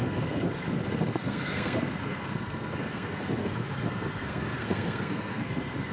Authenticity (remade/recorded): remade